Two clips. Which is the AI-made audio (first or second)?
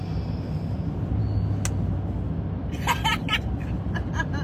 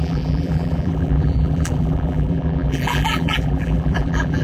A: second